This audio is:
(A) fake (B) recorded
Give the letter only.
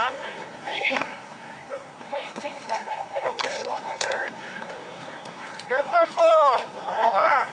A